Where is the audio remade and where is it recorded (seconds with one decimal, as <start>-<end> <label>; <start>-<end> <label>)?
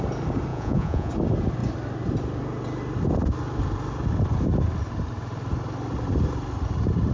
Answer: 0.0-0.5 recorded; 0.5-1.1 remade; 1.1-7.1 recorded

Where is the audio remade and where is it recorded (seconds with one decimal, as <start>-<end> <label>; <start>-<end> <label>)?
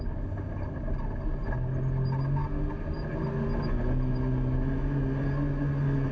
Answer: 0.0-6.1 recorded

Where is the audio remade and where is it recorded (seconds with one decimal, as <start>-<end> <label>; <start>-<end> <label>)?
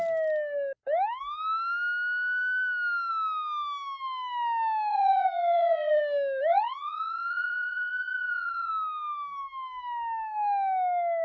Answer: 0.0-4.9 recorded; 4.9-6.0 remade; 6.0-6.5 recorded; 6.5-8.7 remade; 8.7-11.2 recorded